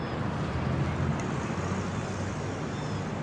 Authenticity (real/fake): real